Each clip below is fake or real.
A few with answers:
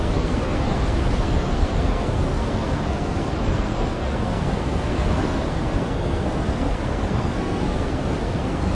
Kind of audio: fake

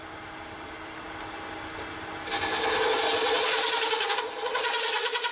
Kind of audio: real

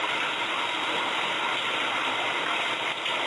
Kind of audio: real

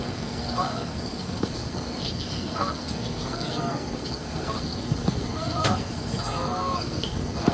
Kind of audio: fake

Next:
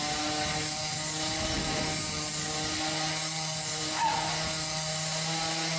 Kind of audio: real